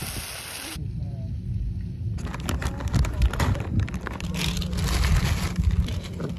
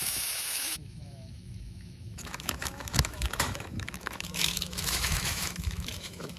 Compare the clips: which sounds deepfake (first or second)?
second